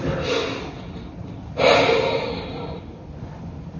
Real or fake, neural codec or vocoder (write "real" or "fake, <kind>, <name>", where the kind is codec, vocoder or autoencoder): real